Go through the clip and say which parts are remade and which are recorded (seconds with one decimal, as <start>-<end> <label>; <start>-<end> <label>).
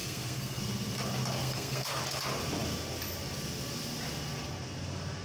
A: 0.0-0.6 remade; 0.6-1.4 recorded; 1.4-2.0 remade; 2.0-5.2 recorded